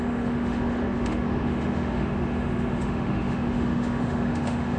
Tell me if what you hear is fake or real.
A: fake